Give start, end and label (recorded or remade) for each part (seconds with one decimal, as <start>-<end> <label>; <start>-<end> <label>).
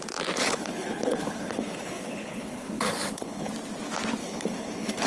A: 0.0-0.4 recorded; 0.4-3.5 remade; 3.5-4.2 recorded; 4.2-5.1 remade